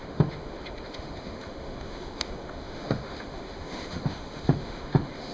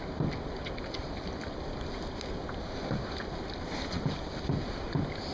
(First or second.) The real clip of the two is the second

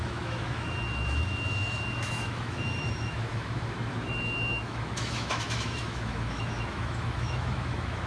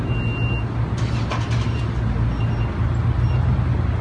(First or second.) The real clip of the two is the second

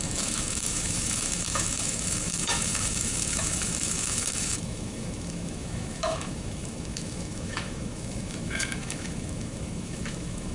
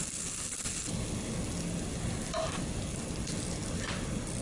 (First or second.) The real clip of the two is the second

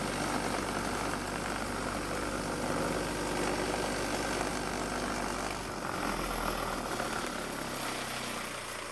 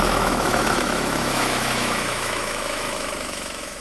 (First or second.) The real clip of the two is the first